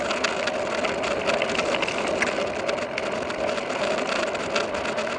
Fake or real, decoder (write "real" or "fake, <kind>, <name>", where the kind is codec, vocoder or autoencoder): real